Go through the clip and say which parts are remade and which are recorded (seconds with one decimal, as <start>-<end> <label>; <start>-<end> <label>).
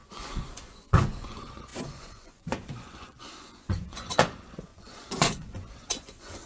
0.0-6.5 remade